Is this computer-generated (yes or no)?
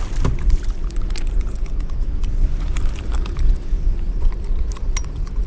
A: no